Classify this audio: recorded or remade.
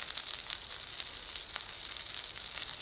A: recorded